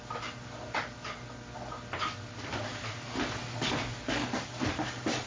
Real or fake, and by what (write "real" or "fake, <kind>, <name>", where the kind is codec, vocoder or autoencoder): real